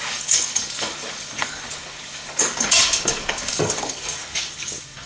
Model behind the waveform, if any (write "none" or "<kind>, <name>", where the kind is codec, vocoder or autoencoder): codec, DAC